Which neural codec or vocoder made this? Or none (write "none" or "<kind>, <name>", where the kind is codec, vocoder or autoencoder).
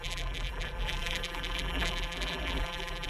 vocoder, BigVGAN v2